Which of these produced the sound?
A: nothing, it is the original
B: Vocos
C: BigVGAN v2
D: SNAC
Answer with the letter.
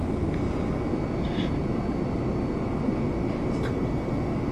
A